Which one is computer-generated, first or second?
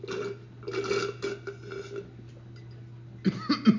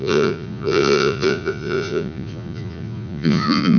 second